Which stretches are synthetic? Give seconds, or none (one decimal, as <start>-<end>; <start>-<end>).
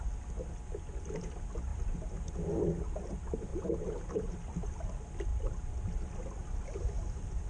1.7-2.7; 3.5-4.8